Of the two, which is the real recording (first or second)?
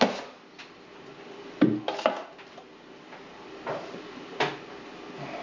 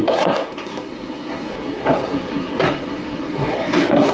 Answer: first